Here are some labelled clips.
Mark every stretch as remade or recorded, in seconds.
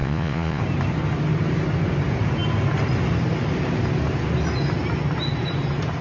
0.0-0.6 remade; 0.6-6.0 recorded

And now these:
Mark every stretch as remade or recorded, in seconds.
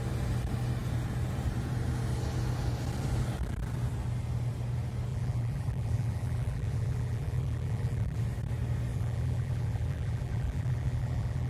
0.0-5.1 recorded; 5.1-8.2 remade; 8.2-8.9 recorded; 8.9-11.5 remade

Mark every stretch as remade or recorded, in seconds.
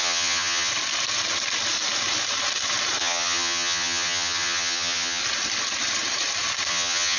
0.0-0.7 remade; 0.7-3.0 recorded; 3.0-5.2 remade; 5.2-6.7 recorded; 6.7-7.2 remade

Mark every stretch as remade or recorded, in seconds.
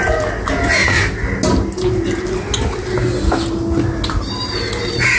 0.0-5.2 recorded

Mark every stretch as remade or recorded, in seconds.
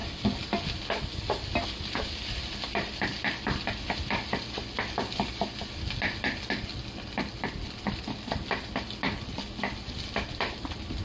0.0-11.0 recorded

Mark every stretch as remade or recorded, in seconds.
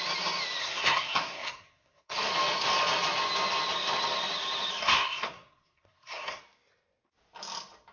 0.0-0.6 recorded; 0.6-2.3 remade; 2.3-4.8 recorded; 4.8-6.4 remade; 6.4-7.9 recorded